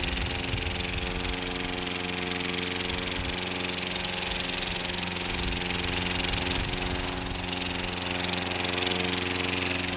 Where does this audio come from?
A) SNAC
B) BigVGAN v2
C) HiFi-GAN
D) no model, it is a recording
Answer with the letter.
D